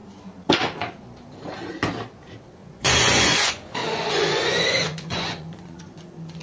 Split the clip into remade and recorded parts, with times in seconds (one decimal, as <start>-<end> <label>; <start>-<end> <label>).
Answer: 0.0-2.6 recorded; 2.6-6.4 remade